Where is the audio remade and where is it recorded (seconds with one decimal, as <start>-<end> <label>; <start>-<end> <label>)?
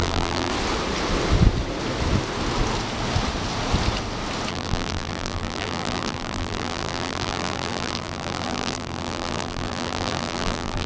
0.0-0.5 remade; 0.5-4.5 recorded; 4.5-10.9 remade